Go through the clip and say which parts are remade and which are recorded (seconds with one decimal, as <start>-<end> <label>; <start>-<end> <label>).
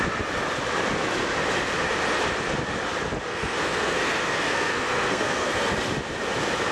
0.0-3.3 recorded; 3.3-5.7 remade; 5.7-6.7 recorded